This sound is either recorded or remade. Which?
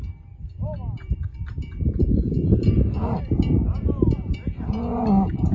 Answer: remade